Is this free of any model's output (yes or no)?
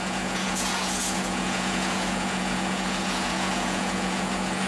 no